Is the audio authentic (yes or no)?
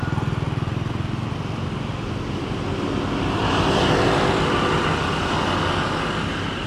yes